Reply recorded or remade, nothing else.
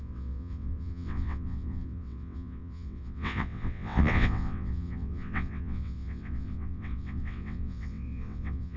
remade